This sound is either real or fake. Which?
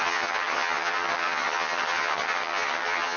fake